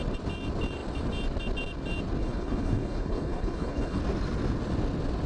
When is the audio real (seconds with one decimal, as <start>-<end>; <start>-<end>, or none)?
0.0-2.2; 4.0-5.3